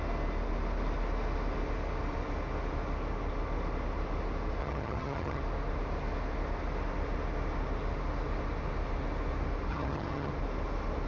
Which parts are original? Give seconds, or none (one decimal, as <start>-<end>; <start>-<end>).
0.0-4.6; 5.4-9.7; 10.3-11.1